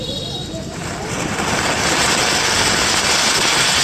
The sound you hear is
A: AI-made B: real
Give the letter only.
B